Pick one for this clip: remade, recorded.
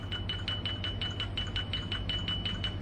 recorded